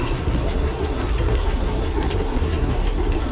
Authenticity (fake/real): fake